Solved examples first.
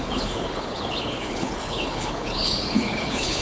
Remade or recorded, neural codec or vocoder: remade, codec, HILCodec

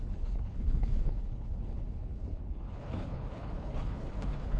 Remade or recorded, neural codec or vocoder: remade, codec, HILCodec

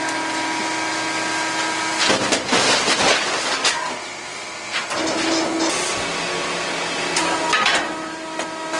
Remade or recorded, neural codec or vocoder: recorded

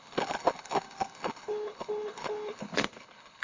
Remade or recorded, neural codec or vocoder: remade, codec, HILCodec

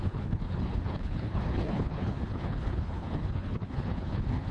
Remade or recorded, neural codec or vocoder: remade, codec, HILCodec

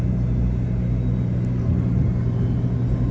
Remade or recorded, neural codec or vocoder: recorded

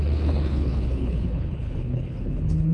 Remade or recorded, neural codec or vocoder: remade, codec, HILCodec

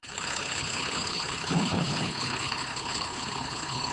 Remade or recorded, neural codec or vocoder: remade, codec, HILCodec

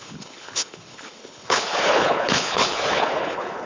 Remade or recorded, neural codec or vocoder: remade, codec, HILCodec